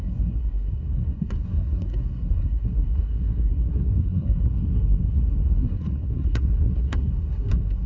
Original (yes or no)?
no